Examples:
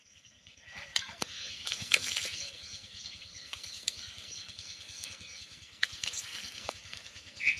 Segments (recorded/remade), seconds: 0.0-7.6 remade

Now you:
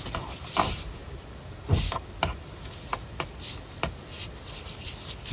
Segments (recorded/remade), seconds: 0.0-5.3 recorded

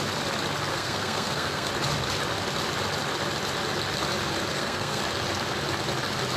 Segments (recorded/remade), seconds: 0.0-0.7 recorded; 0.7-1.7 remade; 1.7-4.5 recorded; 4.5-5.0 remade; 5.0-6.4 recorded

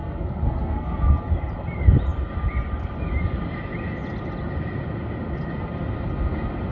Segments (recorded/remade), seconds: 0.0-1.1 remade; 1.1-6.7 recorded

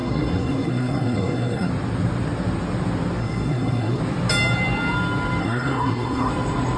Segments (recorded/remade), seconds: 0.0-1.7 remade; 1.7-3.2 recorded; 3.2-4.0 remade; 4.0-5.4 recorded; 5.4-6.3 remade; 6.3-6.8 recorded

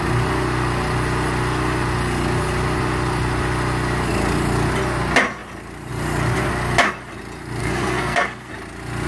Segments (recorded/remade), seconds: 0.0-7.6 recorded; 7.6-8.5 remade; 8.5-9.1 recorded

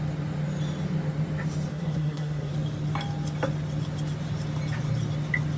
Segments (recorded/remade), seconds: 0.0-1.7 recorded; 1.7-2.5 remade; 2.5-5.6 recorded